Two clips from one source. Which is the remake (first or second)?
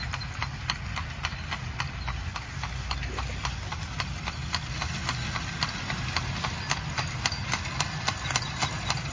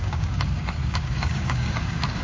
second